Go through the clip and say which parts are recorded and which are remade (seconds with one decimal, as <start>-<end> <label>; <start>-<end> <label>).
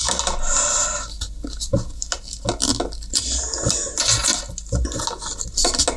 0.0-6.0 recorded